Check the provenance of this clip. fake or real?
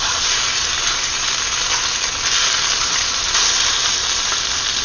real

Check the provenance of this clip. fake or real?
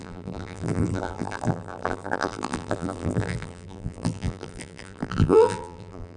fake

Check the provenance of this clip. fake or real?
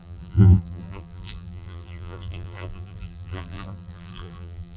fake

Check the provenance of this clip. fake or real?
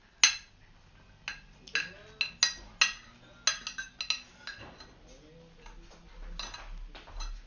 real